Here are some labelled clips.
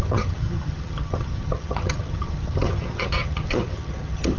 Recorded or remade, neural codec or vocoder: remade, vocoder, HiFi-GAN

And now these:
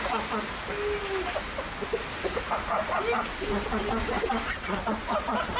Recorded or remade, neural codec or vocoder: recorded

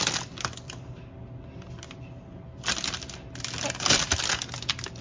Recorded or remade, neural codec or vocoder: recorded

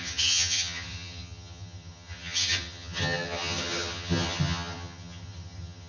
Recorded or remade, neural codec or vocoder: remade, vocoder, HiFi-GAN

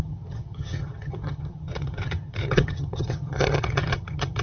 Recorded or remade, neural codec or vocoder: remade, vocoder, HiFi-GAN